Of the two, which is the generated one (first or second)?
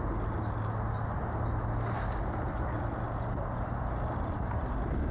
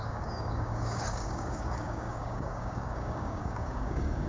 second